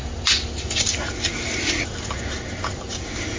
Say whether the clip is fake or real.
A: real